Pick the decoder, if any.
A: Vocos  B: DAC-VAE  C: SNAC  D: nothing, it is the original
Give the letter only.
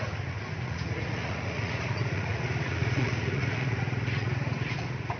A